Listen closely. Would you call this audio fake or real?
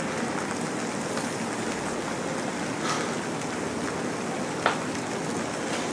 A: real